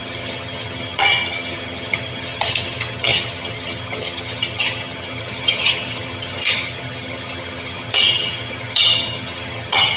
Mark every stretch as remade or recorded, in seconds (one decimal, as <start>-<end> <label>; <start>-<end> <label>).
0.0-10.0 remade